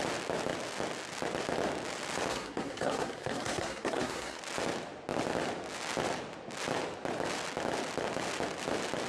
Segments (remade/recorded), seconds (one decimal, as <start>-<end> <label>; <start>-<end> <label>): 0.0-2.3 recorded; 2.3-4.4 remade; 4.4-9.1 recorded